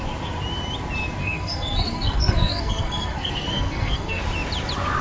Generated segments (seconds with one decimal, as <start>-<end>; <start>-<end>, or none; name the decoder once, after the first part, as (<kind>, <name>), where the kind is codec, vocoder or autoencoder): 1.2-4.2 (codec, SNAC)

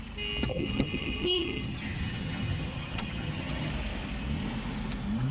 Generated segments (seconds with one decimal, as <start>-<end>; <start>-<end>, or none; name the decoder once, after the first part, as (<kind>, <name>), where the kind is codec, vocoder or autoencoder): 0.5-3.7 (vocoder, HiFi-GAN)

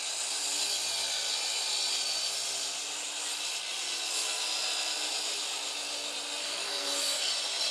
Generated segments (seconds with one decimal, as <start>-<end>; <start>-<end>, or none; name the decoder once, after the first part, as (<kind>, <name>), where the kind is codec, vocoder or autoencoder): 6.4-7.3 (codec, SNAC)

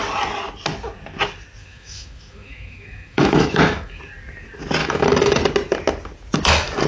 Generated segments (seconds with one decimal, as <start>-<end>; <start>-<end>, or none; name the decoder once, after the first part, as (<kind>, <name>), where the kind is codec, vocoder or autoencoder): 1.6-4.0 (autoencoder, DAC-VAE); 4.8-5.4

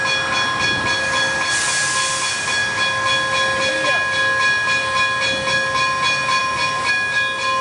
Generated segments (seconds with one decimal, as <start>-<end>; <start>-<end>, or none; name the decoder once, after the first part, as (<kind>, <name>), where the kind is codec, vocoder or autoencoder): none

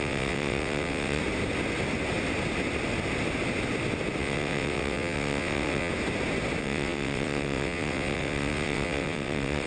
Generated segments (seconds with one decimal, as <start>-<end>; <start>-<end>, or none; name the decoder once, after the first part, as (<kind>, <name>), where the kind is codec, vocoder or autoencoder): 0.0-1.2 (vocoder, WaveNeXt); 4.2-5.9; 6.6-9.7

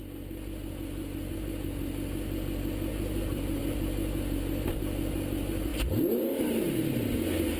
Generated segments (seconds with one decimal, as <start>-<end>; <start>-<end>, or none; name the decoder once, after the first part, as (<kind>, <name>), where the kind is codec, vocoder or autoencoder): 2.9-3.6 (vocoder, BigVGAN v2); 5.7-6.7

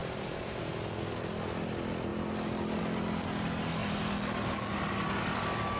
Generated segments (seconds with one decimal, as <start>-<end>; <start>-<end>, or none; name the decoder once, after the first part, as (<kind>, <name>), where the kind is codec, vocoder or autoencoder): 0.0-0.7 (vocoder, BigVGAN v2)